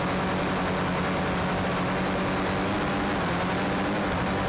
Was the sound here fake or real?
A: real